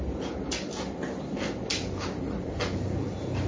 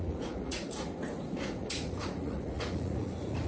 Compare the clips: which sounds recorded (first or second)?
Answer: first